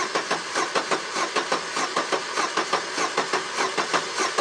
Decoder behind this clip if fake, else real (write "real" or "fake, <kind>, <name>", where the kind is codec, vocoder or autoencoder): real